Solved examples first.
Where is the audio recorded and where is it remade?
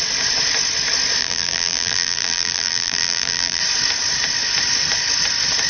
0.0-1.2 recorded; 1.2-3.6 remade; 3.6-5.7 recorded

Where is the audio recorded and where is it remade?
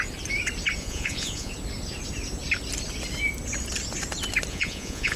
0.0-0.8 recorded; 0.8-1.5 remade; 1.5-4.5 recorded; 4.5-5.2 remade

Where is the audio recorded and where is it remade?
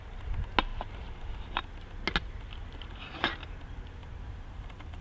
0.0-0.7 recorded; 0.7-1.5 remade; 1.5-4.0 recorded; 4.0-5.0 remade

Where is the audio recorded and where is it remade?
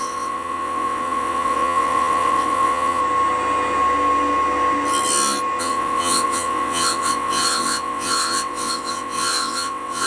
0.0-3.0 remade; 3.0-5.6 recorded; 5.6-10.1 remade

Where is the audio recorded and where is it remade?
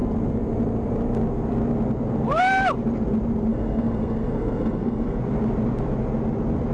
0.0-3.5 recorded; 3.5-5.2 remade; 5.2-6.7 recorded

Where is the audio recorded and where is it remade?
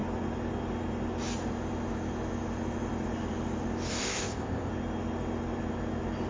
0.0-4.0 recorded; 4.0-4.7 remade; 4.7-6.3 recorded